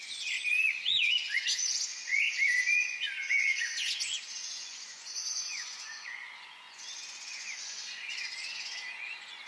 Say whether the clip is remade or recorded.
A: remade